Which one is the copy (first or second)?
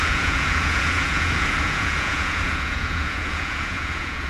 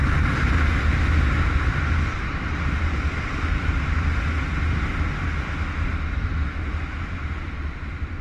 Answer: first